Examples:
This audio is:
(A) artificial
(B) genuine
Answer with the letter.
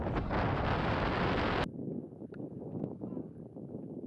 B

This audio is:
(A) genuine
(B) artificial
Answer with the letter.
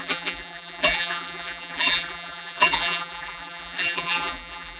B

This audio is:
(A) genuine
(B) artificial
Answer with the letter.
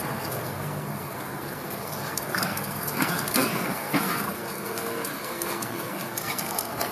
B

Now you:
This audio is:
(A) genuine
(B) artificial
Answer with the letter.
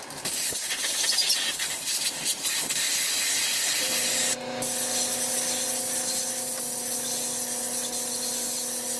A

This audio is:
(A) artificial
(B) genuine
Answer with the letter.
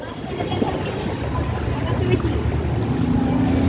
B